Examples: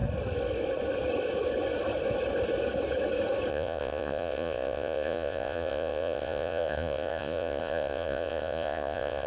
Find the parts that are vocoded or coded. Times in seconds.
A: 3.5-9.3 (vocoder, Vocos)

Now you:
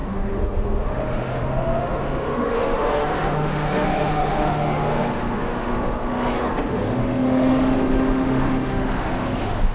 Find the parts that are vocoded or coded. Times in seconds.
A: 0.0-9.7 (autoencoder, DAC-VAE)

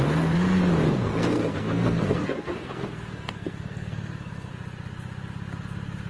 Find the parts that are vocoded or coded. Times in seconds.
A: 0.8-4.5 (codec, SNAC)

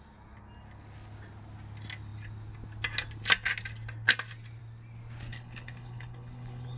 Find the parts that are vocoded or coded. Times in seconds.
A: 5.3-6.8 (codec, HILCodec)

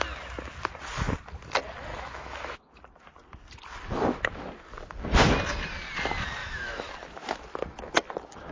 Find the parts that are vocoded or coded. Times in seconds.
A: 1.9-2.8 (autoencoder, DAC-VAE); 6.4-6.9

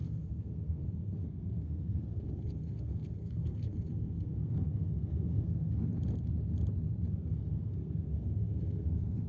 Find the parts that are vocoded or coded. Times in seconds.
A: 0.0-5.9 (codec, SNAC); 7.1-9.3

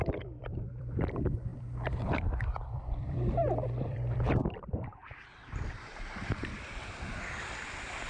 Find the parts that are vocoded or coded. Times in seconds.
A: 0.0-5.0 (vocoder, BigVGAN v2); 5.7-8.1